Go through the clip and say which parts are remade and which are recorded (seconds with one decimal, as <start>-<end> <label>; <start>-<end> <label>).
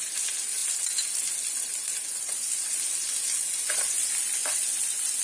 0.0-5.2 recorded